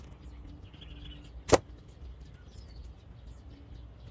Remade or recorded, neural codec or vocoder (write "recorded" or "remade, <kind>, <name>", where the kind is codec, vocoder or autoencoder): recorded